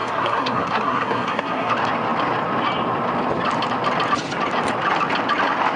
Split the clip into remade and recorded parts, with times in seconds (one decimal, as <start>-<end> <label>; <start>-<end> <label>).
0.0-1.7 remade; 1.7-5.8 recorded